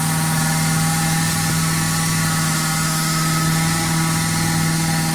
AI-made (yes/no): no